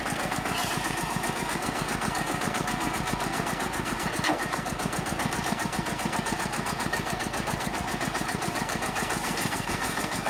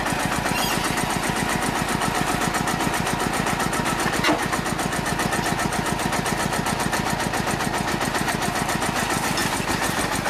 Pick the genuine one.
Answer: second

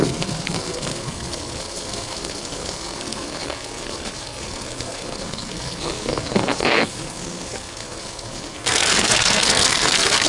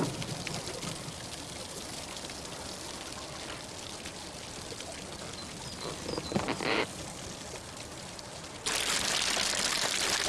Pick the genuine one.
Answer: second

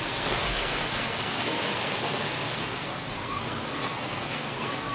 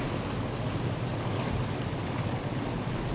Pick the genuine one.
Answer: second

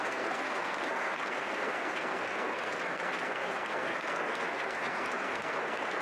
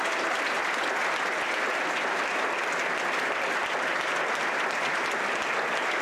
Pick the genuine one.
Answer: second